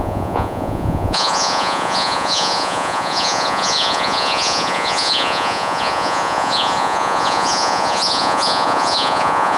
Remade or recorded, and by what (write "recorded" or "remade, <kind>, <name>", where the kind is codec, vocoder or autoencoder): remade, vocoder, Vocos